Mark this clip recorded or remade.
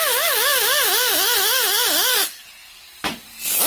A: recorded